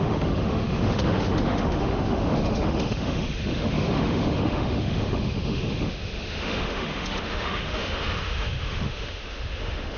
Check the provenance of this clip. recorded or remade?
remade